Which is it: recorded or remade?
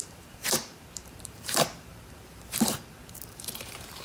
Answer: remade